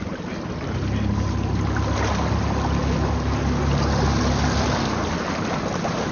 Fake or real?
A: real